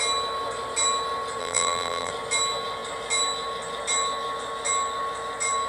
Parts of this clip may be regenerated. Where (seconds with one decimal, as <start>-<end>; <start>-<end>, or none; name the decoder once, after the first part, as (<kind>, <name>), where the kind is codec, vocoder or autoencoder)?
1.4-2.1 (vocoder, BigVGAN v2)